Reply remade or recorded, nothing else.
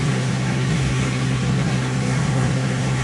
remade